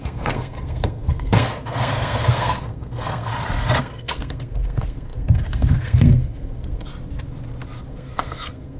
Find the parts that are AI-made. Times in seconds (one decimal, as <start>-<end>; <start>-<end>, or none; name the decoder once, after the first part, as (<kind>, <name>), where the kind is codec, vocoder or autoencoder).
0.0-3.3 (codec, SNAC); 3.8-6.9; 7.9-8.8